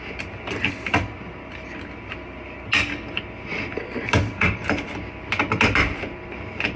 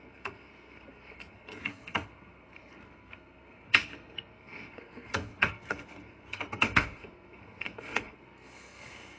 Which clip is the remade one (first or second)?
second